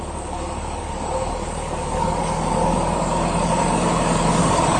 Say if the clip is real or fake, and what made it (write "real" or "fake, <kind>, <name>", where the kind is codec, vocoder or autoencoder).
fake, codec, DAC